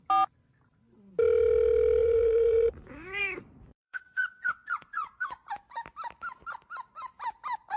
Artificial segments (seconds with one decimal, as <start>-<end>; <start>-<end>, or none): 2.0-3.2; 3.7-5.5

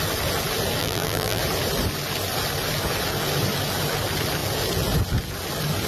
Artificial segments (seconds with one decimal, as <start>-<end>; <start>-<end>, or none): 0.8-1.4

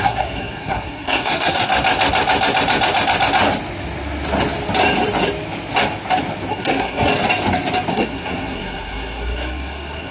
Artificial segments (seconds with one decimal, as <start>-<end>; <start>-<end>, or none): 0.0-1.7; 6.5-7.1; 7.9-10.1

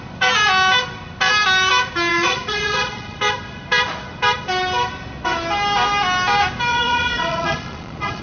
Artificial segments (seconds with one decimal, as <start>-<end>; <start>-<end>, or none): 2.1-3.2; 6.7-8.2

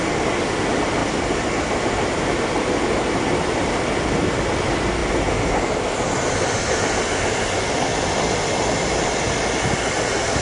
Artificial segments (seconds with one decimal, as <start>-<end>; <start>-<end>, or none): none

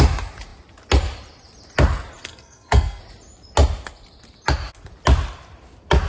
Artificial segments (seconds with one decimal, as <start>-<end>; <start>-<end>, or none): 2.3-3.0

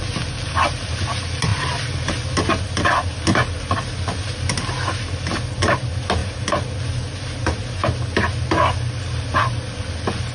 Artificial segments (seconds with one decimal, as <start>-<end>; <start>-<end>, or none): none

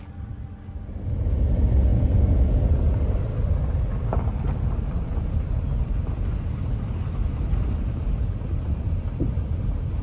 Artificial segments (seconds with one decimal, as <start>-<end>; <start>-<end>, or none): none